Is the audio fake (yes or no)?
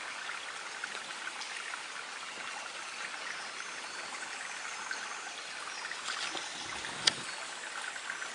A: no